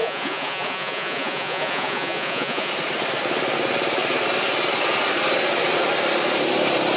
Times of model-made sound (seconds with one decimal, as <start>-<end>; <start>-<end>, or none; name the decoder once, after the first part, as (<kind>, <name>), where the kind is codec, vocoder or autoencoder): 0.0-2.7 (vocoder, Vocos)